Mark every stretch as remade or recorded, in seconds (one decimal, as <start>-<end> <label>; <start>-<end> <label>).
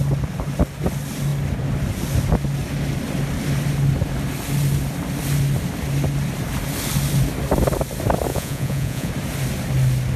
0.0-8.3 recorded; 8.3-9.1 remade; 9.1-10.2 recorded